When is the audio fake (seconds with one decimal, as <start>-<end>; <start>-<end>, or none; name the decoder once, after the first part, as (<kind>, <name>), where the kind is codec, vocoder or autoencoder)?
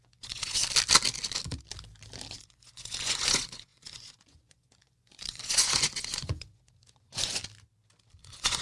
0.0-0.6 (vocoder, Vocos); 2.3-7.4; 8.2-8.6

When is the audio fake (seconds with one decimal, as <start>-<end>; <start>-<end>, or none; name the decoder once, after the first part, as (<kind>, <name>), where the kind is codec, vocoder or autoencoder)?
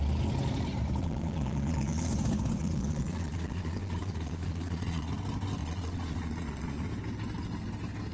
1.0-2.1 (vocoder, Vocos); 2.6-5.1; 5.6-6.9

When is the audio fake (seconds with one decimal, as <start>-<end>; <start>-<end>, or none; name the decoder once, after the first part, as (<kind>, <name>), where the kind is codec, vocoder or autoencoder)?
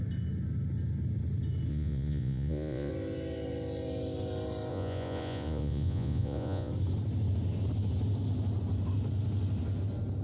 1.7-2.9 (vocoder, Vocos); 4.7-6.7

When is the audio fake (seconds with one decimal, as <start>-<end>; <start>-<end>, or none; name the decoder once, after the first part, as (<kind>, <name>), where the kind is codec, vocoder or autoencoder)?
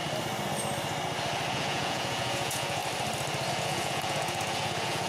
1.5-2.8 (vocoder, Vocos); 3.5-5.1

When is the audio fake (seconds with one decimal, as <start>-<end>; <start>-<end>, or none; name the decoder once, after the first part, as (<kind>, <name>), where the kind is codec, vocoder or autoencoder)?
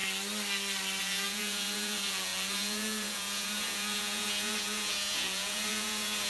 1.0-6.3 (vocoder, Vocos)